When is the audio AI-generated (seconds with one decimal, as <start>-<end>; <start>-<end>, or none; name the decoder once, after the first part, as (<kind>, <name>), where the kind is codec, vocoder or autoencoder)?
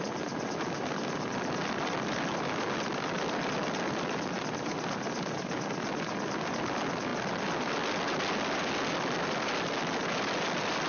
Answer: none